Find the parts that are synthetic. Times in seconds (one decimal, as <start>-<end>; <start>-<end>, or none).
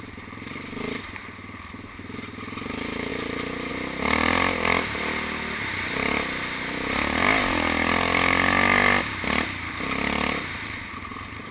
3.1-3.7